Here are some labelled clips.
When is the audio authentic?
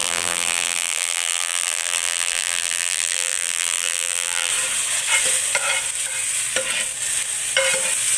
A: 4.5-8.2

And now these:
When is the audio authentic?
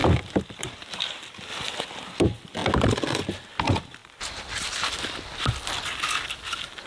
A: 0.0-0.6; 1.5-2.2; 2.6-3.6; 4.0-5.7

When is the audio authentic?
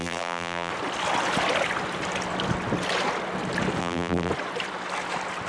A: 0.7-3.8; 4.3-5.5